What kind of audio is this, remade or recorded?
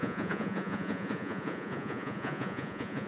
remade